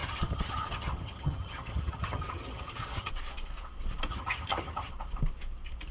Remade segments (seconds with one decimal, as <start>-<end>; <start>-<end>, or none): 0.0-3.1; 4.1-4.9